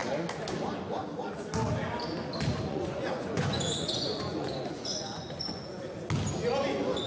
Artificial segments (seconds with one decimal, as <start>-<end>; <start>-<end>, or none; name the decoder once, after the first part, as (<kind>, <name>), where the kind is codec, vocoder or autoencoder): 2.7-5.8 (vocoder, Vocos)